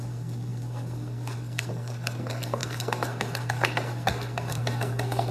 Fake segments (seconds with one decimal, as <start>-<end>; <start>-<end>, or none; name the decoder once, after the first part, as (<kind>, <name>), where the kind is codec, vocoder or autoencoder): 0.0-5.3 (codec, SNAC)